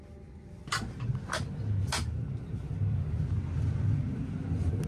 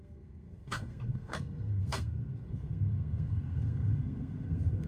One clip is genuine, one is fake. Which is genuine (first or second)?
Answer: first